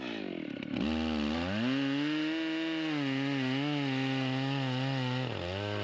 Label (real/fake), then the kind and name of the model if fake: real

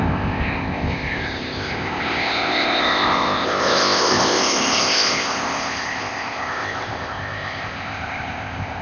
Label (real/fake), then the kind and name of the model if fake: fake, codec, ZipCodec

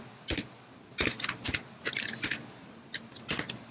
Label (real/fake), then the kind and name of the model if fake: real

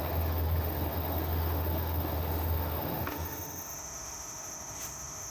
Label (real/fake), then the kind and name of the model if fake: fake, autoencoder, DAC-VAE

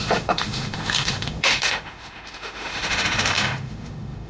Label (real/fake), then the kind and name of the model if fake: fake, autoencoder, DAC-VAE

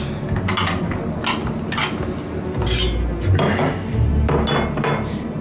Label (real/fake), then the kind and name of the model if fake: real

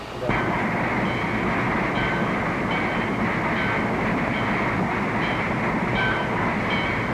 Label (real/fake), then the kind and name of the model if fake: real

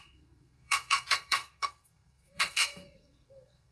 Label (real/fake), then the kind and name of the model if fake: fake, codec, SNAC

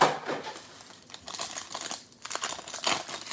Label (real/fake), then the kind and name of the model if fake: real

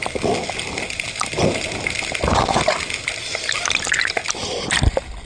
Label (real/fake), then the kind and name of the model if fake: real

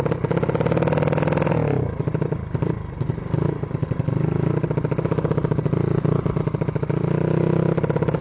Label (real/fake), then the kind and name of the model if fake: real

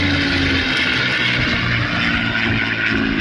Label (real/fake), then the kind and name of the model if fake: real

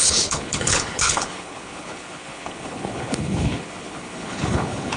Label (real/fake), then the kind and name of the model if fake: fake, codec, HILCodec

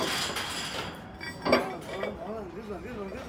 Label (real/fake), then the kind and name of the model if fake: real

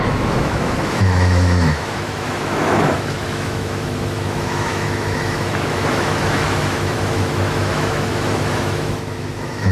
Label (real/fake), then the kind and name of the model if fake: fake, autoencoder, DAC-VAE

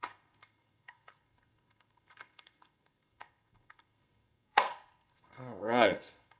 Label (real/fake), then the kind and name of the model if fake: fake, codec, SNAC